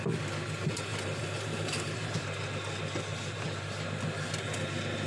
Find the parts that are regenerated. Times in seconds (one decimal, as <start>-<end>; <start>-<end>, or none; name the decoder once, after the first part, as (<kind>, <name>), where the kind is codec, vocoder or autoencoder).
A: 0.9-2.2 (vocoder, BigVGAN v2); 3.1-4.0